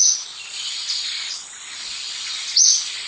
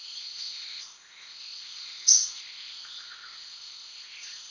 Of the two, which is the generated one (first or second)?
second